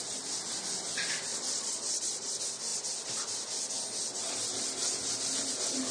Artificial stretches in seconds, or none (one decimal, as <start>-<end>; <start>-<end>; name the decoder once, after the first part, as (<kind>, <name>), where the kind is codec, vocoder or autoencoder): 1.3-2.3 (vocoder, Vocos)